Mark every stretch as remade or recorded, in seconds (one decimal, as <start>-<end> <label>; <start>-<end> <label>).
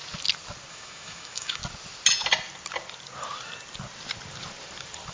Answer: 0.0-0.7 recorded; 0.7-1.6 remade; 1.6-5.1 recorded